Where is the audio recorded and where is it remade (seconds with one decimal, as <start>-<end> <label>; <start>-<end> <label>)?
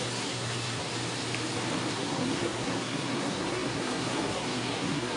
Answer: 0.0-0.9 remade; 0.9-1.9 recorded; 1.9-5.2 remade